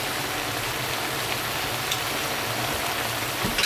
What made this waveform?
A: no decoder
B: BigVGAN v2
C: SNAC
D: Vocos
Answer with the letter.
A